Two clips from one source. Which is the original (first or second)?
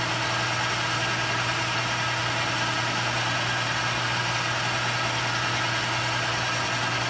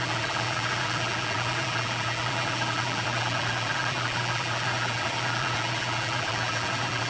first